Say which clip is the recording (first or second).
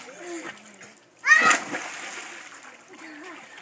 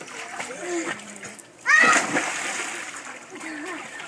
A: first